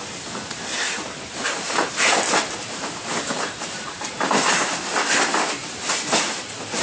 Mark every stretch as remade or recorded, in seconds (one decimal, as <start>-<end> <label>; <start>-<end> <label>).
0.0-0.7 recorded; 0.7-4.8 remade; 4.8-5.6 recorded; 5.6-6.8 remade

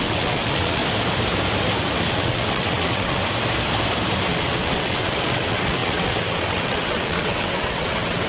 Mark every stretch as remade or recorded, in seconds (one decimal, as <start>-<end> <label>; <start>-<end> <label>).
0.0-0.8 remade; 0.8-2.1 recorded; 2.1-3.2 remade; 3.2-4.3 recorded; 4.3-8.3 remade

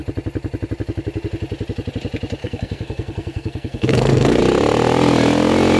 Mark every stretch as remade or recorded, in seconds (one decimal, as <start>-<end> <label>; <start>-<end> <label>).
0.0-2.4 recorded; 2.4-4.4 remade; 4.4-5.8 recorded

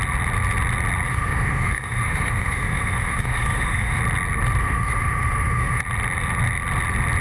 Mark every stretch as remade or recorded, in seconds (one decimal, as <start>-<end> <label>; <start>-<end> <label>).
0.0-1.1 recorded; 1.1-4.0 remade; 4.0-4.6 recorded; 4.6-5.8 remade; 5.8-7.2 recorded